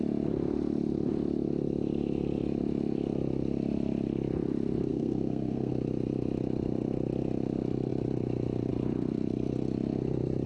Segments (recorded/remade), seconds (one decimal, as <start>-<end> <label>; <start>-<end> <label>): 0.0-4.9 recorded; 4.9-5.7 remade; 5.7-10.5 recorded

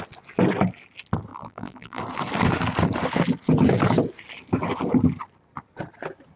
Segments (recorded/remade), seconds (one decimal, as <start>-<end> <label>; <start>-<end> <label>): 0.0-1.3 recorded; 1.3-2.0 remade; 2.0-6.4 recorded

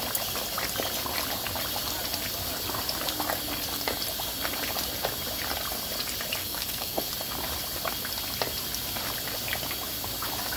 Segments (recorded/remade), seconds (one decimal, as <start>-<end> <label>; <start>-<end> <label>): 0.0-6.4 recorded; 6.4-7.1 remade; 7.1-10.6 recorded

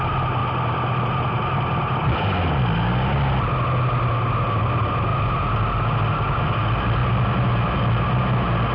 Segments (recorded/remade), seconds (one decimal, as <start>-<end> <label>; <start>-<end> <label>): 0.0-8.7 recorded